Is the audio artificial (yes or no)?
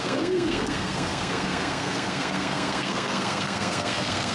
yes